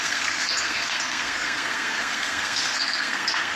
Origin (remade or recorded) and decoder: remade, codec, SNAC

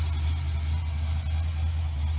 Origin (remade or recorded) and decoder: recorded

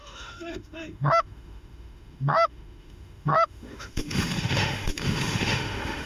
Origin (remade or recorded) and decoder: remade, autoencoder, DAC-VAE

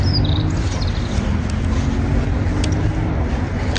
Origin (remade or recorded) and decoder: recorded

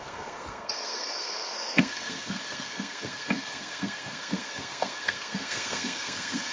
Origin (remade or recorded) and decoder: remade, codec, SNAC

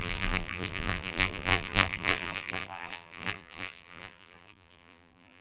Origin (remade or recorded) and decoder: remade, vocoder, BigVGAN v2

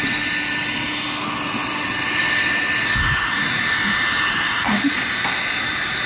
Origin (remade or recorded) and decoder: recorded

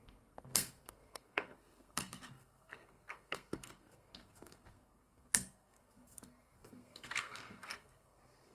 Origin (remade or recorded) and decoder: remade, codec, SNAC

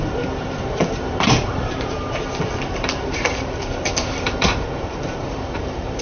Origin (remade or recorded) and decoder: remade, vocoder, BigVGAN v2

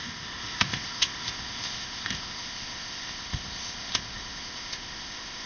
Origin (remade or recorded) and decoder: remade, codec, ZipCodec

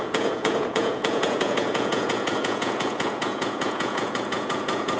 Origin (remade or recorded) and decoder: remade, vocoder, Vocos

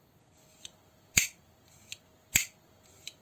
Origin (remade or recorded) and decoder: recorded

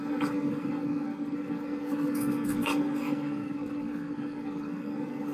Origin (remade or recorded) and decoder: remade, codec, SNAC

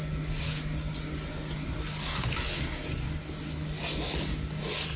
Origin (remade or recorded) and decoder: recorded